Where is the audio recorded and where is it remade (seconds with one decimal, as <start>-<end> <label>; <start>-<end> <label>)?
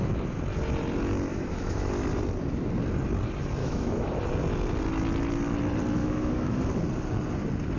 0.0-1.3 recorded; 1.3-1.9 remade; 1.9-3.6 recorded; 3.6-4.2 remade; 4.2-6.0 recorded; 6.0-6.6 remade; 6.6-7.8 recorded